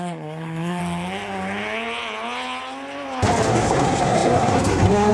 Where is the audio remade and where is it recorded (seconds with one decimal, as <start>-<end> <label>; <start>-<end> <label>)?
0.0-0.8 remade; 0.8-3.5 recorded; 3.5-5.1 remade